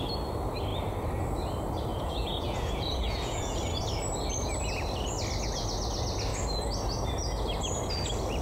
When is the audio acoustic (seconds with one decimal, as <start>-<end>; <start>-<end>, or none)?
0.0-1.9; 3.6-8.4